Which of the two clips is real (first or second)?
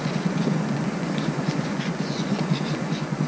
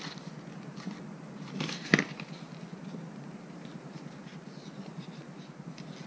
second